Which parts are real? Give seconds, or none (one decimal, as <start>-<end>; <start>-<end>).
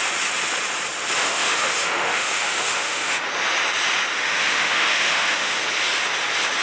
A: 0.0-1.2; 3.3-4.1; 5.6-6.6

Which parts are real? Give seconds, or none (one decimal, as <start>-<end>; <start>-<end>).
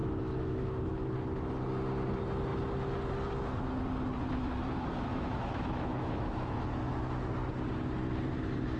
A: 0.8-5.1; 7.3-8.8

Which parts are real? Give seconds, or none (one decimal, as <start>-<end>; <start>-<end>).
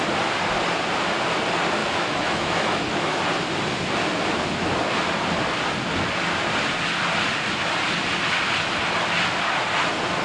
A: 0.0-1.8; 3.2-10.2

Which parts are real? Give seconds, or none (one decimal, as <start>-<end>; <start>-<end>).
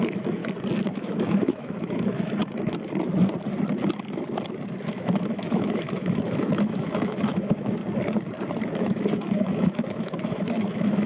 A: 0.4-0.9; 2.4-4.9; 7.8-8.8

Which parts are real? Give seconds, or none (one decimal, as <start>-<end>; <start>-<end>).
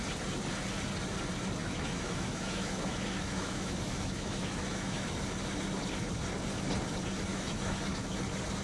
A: 0.0-1.6; 5.1-7.3; 7.9-8.6